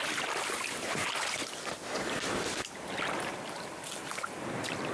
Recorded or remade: recorded